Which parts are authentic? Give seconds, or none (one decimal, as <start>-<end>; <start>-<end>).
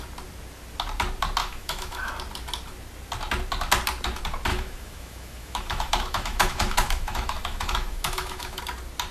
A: 0.0-1.4; 2.1-4.5; 8.6-9.1